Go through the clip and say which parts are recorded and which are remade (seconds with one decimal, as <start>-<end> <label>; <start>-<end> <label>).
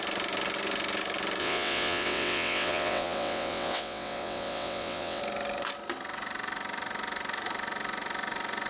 0.0-1.4 recorded; 1.4-5.2 remade; 5.2-8.7 recorded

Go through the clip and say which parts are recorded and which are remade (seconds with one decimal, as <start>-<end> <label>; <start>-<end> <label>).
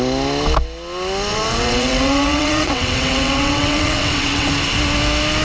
0.0-1.3 recorded; 1.3-4.5 remade; 4.5-5.4 recorded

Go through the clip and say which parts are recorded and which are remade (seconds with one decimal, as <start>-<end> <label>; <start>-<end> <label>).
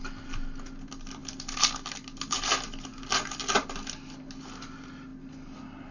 0.0-5.9 recorded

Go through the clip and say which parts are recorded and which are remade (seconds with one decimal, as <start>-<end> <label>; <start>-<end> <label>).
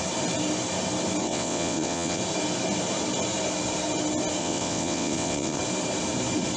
0.0-1.2 recorded; 1.2-2.2 remade; 2.2-4.4 recorded; 4.4-5.6 remade; 5.6-6.6 recorded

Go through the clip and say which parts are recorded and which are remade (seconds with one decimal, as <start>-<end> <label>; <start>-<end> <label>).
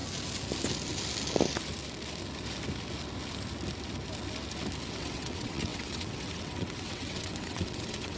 0.0-4.9 recorded; 4.9-8.2 remade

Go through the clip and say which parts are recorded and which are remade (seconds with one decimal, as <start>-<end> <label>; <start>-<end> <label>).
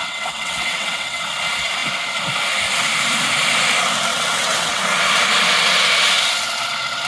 0.0-1.2 remade; 1.2-4.1 recorded; 4.1-4.8 remade; 4.8-7.1 recorded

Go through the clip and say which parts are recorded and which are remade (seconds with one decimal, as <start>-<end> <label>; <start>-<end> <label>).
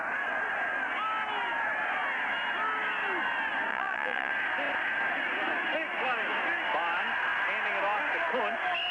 0.0-3.7 recorded; 3.7-4.3 remade; 4.3-8.9 recorded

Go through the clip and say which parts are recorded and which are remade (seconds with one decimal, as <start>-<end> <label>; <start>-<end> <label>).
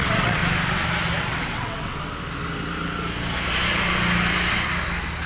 0.0-0.4 remade; 0.4-1.2 recorded; 1.2-1.9 remade; 1.9-5.3 recorded